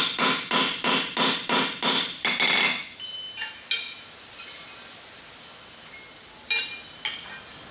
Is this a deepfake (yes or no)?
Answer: no